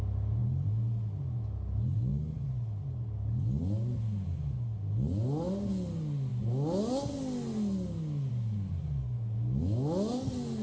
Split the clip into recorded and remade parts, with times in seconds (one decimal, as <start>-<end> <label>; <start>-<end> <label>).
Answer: 0.0-10.6 recorded